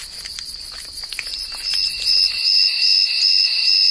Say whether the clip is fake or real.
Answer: real